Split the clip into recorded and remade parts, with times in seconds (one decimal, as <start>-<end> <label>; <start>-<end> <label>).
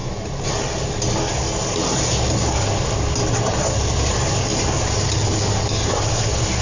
0.0-4.0 recorded; 4.0-4.5 remade; 4.5-5.3 recorded; 5.3-6.6 remade